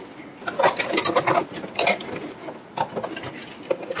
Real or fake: real